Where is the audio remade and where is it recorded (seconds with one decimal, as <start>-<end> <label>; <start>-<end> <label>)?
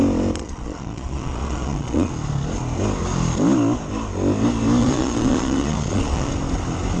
0.0-0.4 recorded; 0.4-2.1 remade; 2.1-4.8 recorded; 4.8-6.3 remade; 6.3-7.0 recorded